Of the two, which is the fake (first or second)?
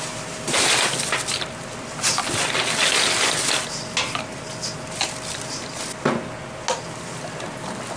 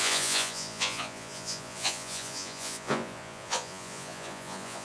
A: second